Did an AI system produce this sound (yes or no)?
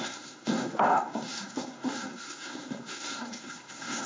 yes